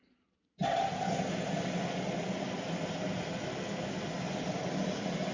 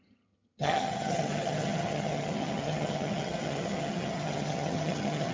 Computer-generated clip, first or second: second